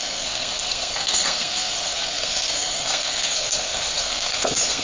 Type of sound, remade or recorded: remade